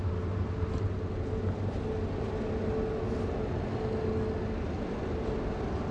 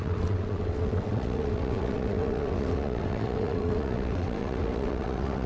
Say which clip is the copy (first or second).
second